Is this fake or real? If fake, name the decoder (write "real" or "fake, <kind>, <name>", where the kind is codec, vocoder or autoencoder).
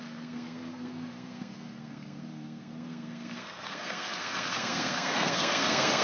fake, codec, SNAC